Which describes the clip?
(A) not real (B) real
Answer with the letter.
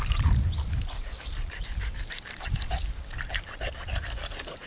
A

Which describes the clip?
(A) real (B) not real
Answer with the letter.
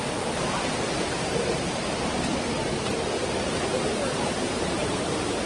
B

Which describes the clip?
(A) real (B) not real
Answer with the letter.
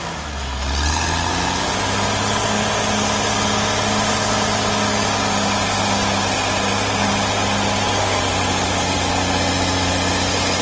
A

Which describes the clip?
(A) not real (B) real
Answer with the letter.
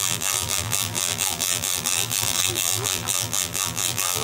A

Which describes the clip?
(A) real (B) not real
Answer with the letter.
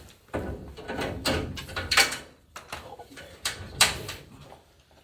B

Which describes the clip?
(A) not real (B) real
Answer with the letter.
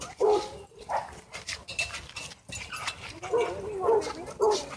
B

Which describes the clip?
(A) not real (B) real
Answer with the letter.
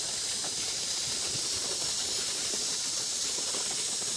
B